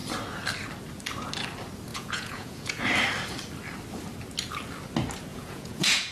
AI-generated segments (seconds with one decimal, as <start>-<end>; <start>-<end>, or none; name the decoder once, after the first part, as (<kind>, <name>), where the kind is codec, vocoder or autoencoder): 1.9-2.8 (vocoder, Vocos); 5.3-6.1

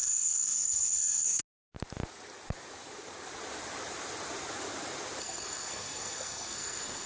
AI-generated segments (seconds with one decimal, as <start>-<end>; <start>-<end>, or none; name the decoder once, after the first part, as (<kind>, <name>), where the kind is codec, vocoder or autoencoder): 0.0-1.4 (codec, SNAC); 5.2-7.1